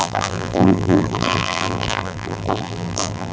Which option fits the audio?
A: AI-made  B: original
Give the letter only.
A